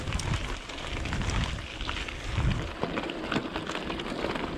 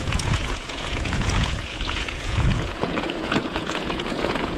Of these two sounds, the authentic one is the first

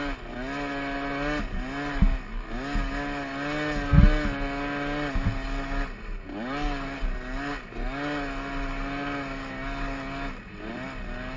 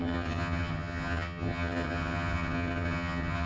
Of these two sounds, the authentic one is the first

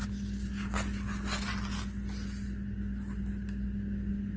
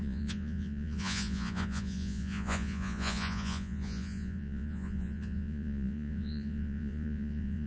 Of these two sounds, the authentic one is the first